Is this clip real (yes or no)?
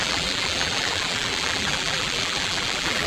no